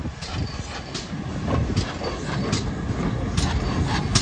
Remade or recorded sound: recorded